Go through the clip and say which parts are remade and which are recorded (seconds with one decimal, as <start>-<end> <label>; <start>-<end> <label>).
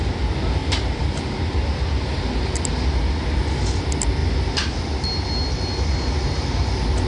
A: 0.0-0.6 recorded; 0.6-2.6 remade; 2.6-7.1 recorded